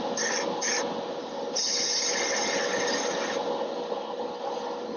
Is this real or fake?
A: real